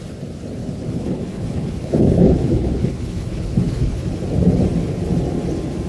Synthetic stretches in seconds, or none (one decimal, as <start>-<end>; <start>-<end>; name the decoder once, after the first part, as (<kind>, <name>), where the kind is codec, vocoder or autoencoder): 0.6-4.1 (codec, HILCodec)